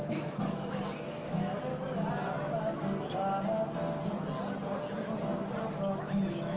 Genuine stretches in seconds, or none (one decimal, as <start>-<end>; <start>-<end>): 1.7-5.7